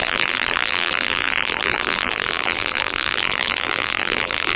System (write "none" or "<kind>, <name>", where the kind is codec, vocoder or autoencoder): vocoder, BigVGAN v2